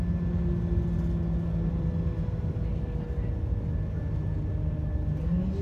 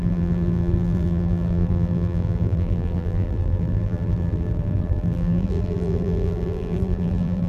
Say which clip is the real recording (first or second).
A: first